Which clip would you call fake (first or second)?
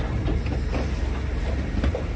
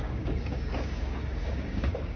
second